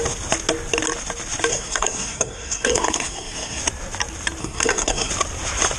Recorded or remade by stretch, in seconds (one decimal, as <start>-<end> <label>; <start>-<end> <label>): 0.0-1.5 recorded; 1.5-3.6 remade; 3.6-4.4 recorded; 4.4-5.1 remade; 5.1-5.8 recorded